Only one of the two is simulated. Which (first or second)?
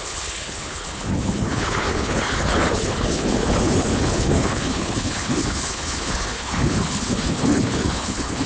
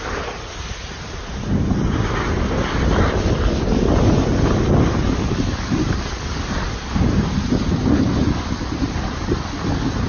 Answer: first